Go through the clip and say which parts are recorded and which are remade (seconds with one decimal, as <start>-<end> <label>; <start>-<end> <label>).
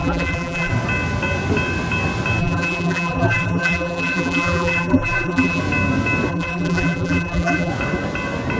0.0-0.7 remade; 0.7-2.4 recorded; 2.4-5.6 remade; 5.6-6.3 recorded; 6.3-7.7 remade; 7.7-8.6 recorded